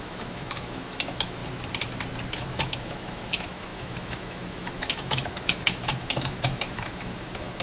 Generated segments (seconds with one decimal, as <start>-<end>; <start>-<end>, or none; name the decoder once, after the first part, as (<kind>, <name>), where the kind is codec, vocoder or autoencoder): 0.0-1.4 (autoencoder, DAC-VAE); 2.3-7.6

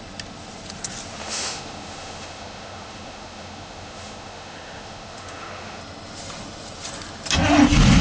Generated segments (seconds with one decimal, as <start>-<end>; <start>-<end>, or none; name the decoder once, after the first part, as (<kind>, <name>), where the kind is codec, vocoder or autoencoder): 1.2-5.8 (autoencoder, DAC-VAE)

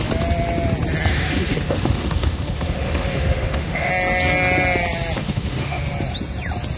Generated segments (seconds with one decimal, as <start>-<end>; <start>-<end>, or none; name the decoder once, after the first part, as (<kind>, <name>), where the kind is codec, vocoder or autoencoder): 1.1-3.9 (autoencoder, DAC-VAE); 5.2-5.8

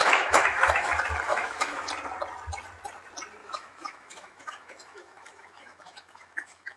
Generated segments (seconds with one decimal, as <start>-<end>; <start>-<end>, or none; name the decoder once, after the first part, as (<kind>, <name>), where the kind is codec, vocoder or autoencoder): 0.0-0.9 (autoencoder, DAC-VAE); 1.3-1.9; 3.4-6.8

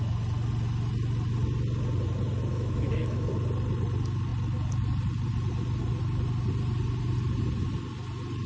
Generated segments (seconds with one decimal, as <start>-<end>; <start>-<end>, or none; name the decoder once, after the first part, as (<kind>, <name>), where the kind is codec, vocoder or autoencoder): 2.5-3.3 (autoencoder, DAC-VAE)

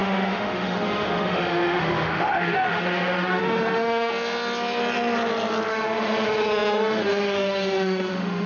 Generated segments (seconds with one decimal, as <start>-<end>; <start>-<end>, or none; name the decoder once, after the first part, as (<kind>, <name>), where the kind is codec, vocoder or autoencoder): 0.0-4.1 (autoencoder, DAC-VAE); 5.7-8.5